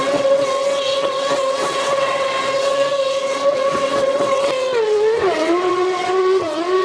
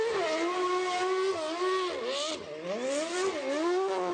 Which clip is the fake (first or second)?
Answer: first